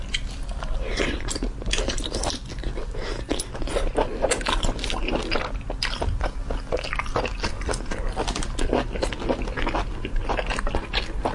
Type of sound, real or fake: real